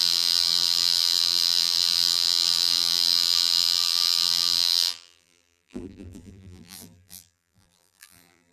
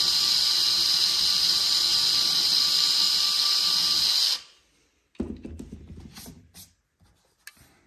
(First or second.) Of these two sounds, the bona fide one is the second